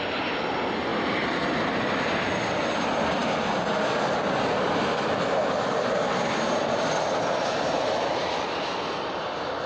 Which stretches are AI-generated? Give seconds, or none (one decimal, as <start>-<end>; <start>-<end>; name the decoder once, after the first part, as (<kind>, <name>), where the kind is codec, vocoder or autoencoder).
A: none